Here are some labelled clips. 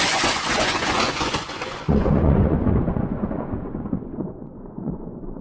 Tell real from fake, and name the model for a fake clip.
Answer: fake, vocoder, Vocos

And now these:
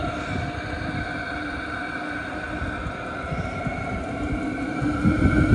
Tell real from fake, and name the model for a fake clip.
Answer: real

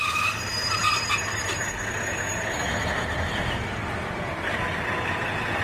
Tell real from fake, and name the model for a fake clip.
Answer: fake, vocoder, BigVGAN v2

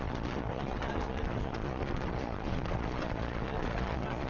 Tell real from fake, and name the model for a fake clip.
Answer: fake, vocoder, Vocos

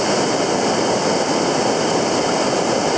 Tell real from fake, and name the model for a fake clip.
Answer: real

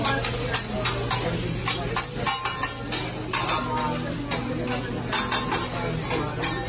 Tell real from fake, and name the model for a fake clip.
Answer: real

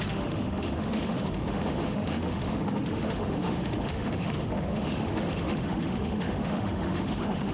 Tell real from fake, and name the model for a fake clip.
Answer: fake, autoencoder, DAC-VAE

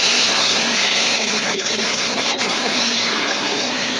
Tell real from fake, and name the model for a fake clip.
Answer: fake, codec, SNAC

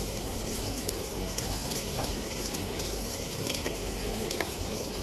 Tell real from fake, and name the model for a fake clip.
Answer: fake, codec, SNAC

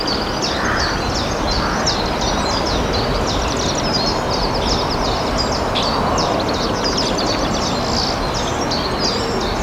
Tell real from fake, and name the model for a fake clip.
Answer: real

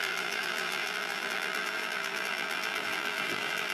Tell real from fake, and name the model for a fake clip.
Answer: fake, vocoder, BigVGAN v2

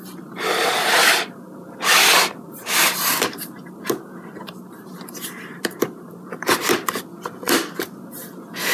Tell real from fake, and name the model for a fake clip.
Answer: fake, vocoder, BigVGAN v2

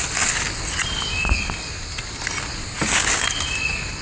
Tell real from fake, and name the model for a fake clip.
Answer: real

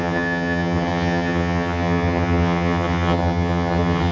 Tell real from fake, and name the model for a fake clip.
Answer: fake, vocoder, HiFi-GAN